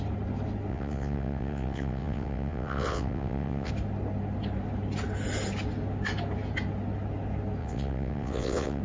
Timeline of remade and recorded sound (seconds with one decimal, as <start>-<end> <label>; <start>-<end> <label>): 0.0-0.7 recorded; 0.7-3.7 remade; 3.7-7.6 recorded; 7.6-8.8 remade